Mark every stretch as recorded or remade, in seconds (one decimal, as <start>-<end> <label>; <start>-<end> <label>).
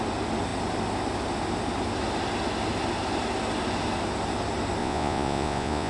0.0-4.8 recorded; 4.8-5.9 remade